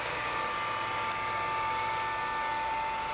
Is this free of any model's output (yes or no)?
yes